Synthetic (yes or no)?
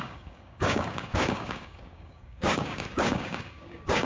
yes